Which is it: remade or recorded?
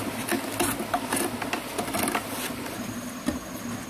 recorded